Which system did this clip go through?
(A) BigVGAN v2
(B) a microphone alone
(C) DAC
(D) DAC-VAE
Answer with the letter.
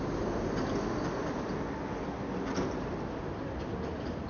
B